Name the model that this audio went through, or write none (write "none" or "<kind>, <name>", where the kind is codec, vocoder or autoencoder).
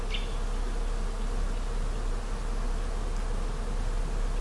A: none